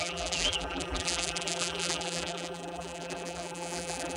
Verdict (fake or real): fake